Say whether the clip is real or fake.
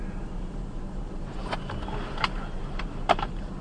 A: fake